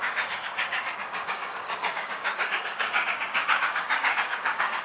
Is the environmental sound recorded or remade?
remade